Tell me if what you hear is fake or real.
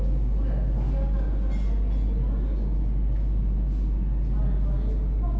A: real